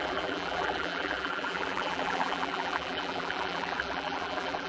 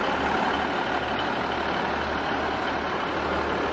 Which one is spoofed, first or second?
first